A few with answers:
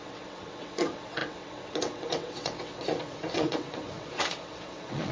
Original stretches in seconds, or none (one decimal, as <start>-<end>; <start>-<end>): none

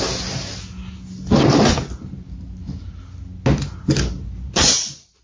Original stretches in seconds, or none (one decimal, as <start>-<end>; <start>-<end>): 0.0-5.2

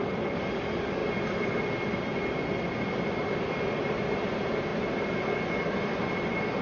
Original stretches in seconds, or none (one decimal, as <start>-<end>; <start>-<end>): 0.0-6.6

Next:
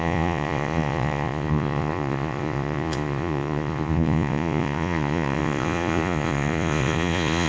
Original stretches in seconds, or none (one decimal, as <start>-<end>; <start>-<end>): none